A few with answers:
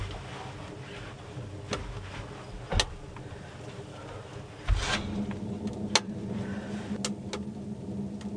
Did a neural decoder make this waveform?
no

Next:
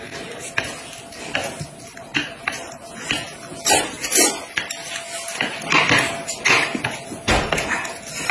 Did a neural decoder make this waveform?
no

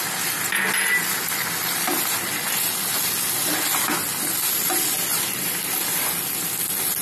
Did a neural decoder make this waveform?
no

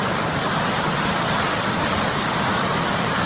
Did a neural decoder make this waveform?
no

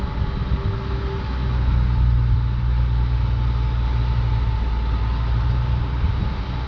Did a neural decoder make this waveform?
no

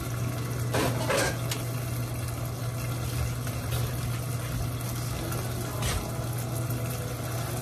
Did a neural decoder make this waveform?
no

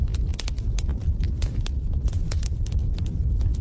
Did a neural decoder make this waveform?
no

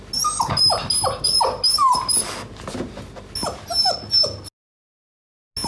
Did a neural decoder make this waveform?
no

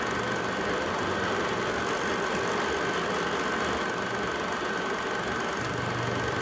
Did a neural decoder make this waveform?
no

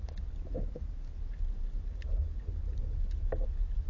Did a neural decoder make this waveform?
no